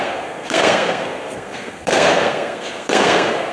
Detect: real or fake fake